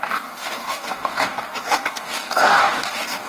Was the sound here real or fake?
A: fake